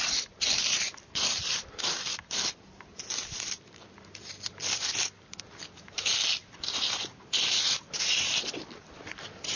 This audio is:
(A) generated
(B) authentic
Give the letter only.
A